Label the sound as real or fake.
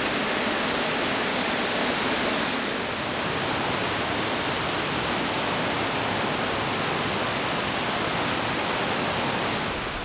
real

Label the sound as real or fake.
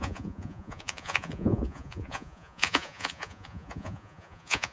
fake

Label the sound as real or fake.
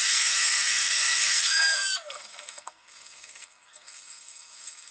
fake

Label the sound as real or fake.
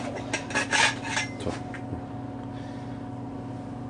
real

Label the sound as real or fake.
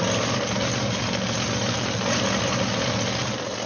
real